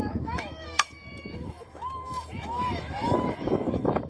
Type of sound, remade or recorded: remade